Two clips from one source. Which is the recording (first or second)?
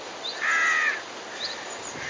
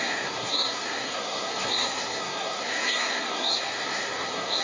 first